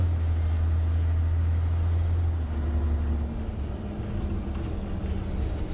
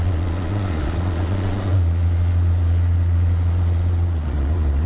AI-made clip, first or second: second